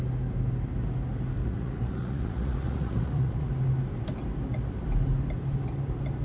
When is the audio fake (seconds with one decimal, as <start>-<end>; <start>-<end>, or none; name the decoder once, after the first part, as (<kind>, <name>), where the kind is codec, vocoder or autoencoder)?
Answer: 1.4-3.5 (vocoder, Vocos)